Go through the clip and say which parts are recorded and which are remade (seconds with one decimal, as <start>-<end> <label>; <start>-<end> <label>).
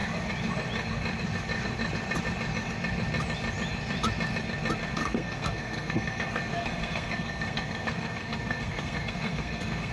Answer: 0.0-4.9 recorded; 4.9-9.9 remade